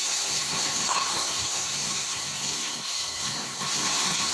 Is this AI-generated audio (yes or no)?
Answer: yes